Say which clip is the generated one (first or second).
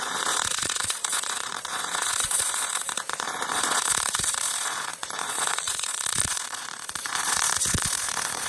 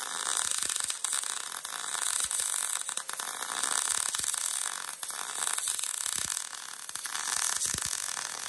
first